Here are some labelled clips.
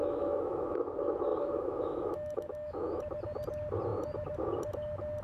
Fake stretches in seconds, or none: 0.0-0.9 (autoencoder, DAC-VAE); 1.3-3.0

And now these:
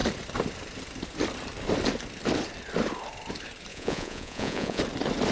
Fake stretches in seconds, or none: 3.7-4.8 (vocoder, Vocos)

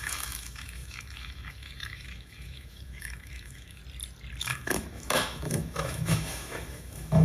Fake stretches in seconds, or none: 0.0-3.8 (autoencoder, DAC-VAE); 4.4-7.2

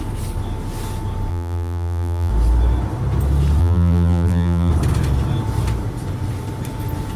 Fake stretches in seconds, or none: 1.3-2.3 (vocoder, BigVGAN v2); 3.6-4.7